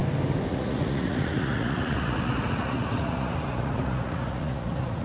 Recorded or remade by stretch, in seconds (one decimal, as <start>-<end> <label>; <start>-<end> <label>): 0.0-0.5 recorded; 0.5-5.0 remade